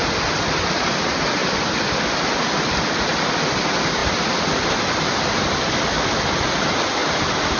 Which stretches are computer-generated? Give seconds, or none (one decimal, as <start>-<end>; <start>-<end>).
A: 7.0-7.6